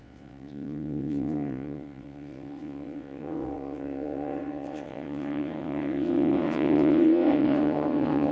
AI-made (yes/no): yes